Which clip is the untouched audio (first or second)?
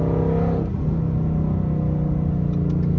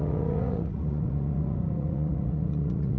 first